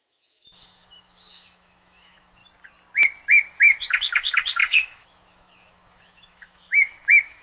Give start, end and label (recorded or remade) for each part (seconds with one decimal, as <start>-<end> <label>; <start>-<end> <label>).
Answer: 0.0-2.4 remade; 2.4-3.5 recorded; 3.5-7.4 remade